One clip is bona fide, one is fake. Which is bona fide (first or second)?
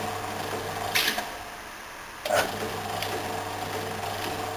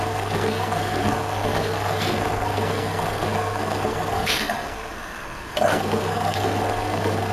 first